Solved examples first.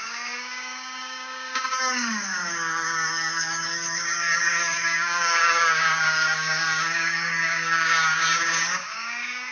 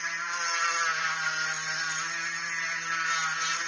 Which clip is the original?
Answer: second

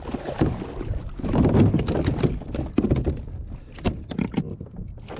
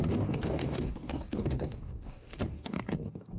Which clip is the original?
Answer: first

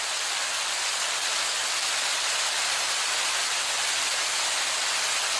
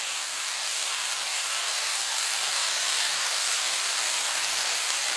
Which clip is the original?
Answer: first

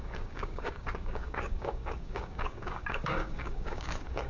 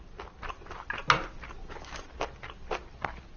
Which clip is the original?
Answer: second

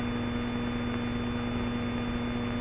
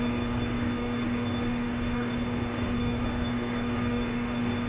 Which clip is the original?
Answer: first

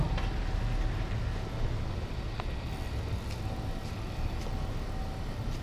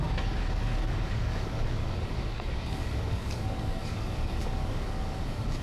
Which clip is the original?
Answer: first